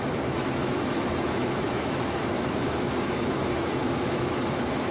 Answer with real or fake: fake